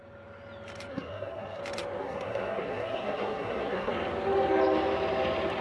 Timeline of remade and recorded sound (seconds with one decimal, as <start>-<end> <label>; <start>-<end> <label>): 0.0-0.9 recorded; 0.9-1.6 remade; 1.6-2.0 recorded; 2.0-3.9 remade; 3.9-5.6 recorded